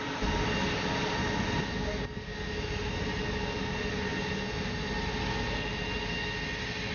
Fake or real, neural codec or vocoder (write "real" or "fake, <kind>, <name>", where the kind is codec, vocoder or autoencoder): real